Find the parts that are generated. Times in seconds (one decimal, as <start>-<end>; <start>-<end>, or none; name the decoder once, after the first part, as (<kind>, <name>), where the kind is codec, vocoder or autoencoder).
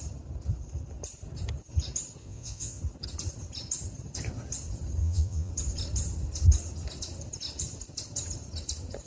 2.2-2.8 (vocoder, Vocos); 5.0-5.5